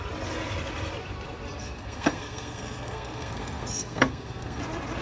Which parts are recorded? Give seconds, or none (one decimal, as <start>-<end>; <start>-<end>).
0.0-1.6; 4.6-5.0